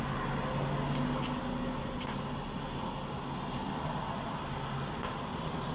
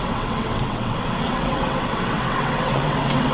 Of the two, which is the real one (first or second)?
first